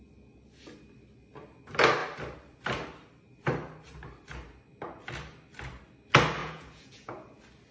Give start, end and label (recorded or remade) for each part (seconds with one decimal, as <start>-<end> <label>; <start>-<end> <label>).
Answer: 0.0-6.4 recorded; 6.4-7.1 remade; 7.1-7.7 recorded